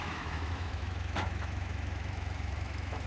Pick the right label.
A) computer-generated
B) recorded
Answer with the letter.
A